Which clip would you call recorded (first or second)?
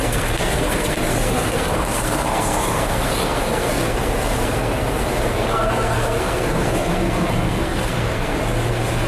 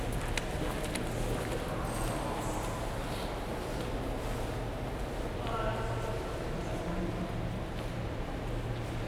second